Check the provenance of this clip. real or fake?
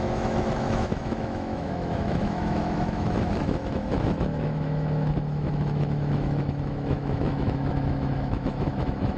fake